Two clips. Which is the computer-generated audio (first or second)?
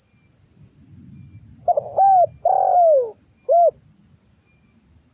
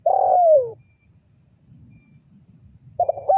second